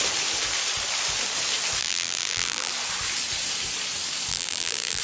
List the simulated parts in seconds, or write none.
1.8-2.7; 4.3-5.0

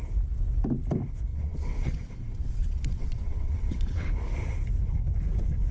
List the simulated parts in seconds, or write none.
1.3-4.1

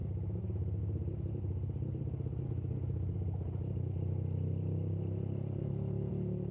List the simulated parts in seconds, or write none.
0.0-0.8; 5.6-6.1

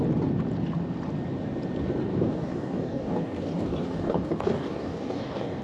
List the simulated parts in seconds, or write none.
2.1-5.6

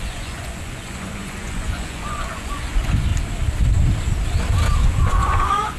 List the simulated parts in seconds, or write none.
0.0-3.1; 4.9-5.8